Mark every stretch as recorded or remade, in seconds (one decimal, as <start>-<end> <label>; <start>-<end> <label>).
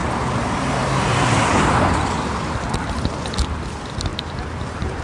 0.0-3.0 remade; 3.0-4.1 recorded; 4.1-5.0 remade